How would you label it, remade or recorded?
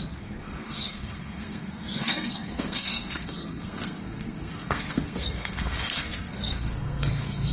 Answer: remade